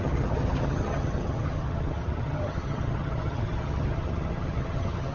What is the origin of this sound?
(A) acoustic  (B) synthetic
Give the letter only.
B